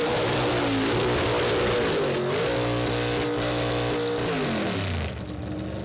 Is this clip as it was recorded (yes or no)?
yes